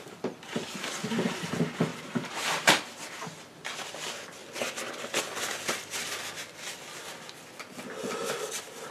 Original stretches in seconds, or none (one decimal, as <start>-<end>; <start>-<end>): 0.0-8.9